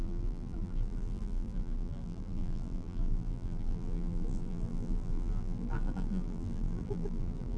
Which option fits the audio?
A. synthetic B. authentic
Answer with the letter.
A